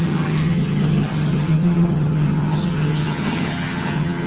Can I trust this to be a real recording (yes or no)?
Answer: no